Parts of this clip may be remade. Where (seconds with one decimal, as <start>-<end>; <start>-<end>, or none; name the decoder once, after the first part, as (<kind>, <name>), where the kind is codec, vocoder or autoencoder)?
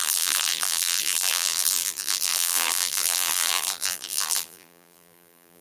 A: 0.0-5.6 (vocoder, BigVGAN v2)